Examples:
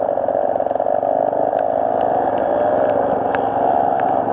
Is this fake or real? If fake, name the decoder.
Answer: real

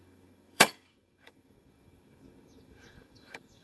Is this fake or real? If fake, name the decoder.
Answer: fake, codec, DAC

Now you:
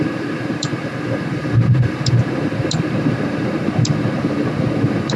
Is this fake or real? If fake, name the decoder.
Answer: fake, vocoder, BigVGAN v2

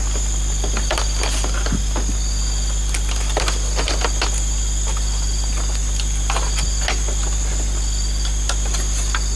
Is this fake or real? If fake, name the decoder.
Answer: real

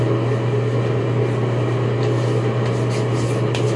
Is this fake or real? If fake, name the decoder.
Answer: real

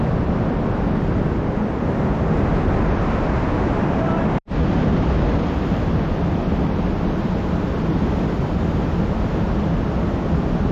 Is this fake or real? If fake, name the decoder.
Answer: real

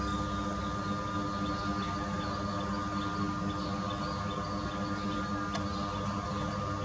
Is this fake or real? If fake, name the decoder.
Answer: real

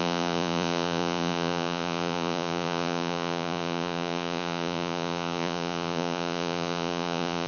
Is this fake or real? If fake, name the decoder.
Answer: fake, vocoder, Vocos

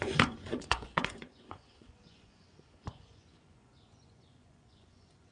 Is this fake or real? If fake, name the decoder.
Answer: fake, vocoder, Vocos